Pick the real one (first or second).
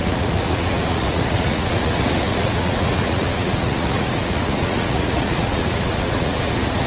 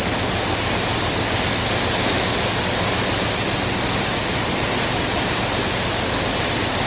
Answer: second